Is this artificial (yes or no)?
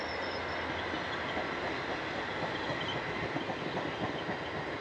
no